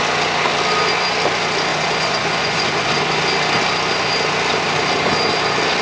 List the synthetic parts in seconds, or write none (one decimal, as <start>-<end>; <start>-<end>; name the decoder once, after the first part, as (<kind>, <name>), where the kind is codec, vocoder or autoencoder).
1.7-3.2 (vocoder, Vocos)